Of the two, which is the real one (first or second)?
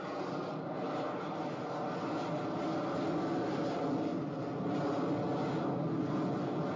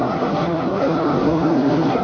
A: first